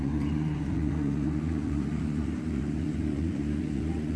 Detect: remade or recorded remade